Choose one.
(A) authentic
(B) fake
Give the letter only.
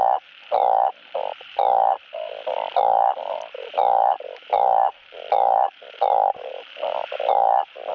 B